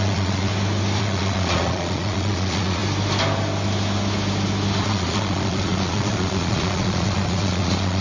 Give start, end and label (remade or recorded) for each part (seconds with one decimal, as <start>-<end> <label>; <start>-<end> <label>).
0.0-0.5 remade; 0.5-1.0 recorded; 1.0-2.8 remade; 2.8-4.8 recorded; 4.8-8.0 remade